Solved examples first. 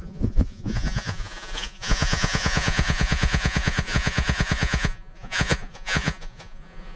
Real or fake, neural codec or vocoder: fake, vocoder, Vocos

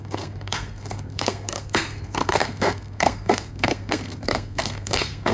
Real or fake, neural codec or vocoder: fake, codec, SNAC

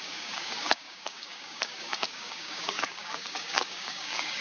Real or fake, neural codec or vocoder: fake, codec, DAC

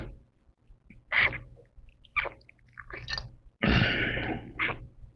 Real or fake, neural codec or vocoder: real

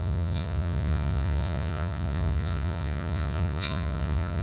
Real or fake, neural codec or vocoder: fake, vocoder, Vocos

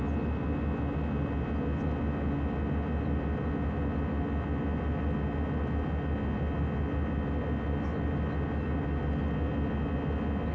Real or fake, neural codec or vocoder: real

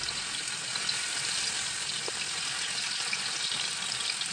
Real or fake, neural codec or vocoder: real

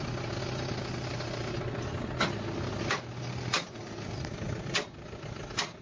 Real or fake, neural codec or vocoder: real